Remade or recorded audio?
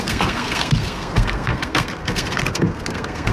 remade